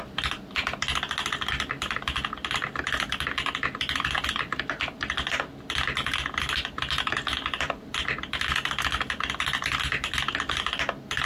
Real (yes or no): yes